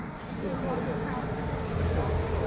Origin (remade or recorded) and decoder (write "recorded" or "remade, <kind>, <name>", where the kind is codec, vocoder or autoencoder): recorded